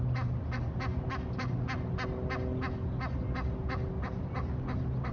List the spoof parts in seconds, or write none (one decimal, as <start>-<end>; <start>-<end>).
none